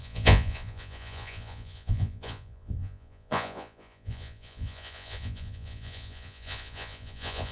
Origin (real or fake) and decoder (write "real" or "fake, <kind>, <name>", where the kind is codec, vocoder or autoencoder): fake, vocoder, Vocos